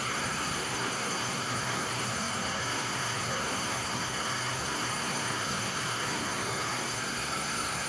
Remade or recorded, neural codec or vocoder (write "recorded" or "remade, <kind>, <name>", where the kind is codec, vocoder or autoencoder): remade, codec, SNAC